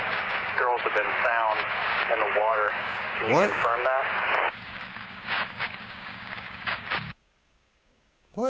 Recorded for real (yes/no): no